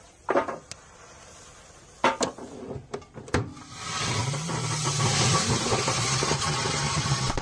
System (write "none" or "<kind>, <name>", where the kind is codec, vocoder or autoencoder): none